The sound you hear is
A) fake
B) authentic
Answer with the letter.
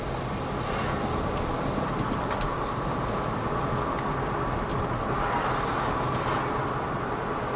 B